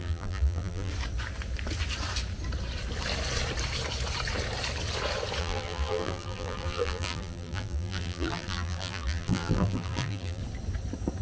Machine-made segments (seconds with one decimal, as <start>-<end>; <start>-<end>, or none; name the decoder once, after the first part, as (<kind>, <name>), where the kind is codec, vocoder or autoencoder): 0.0-0.9 (vocoder, BigVGAN v2); 5.4-10.4